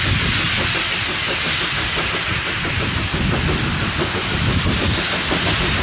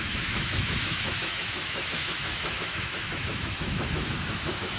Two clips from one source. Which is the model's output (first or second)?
second